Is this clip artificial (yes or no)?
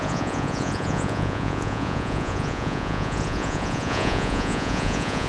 yes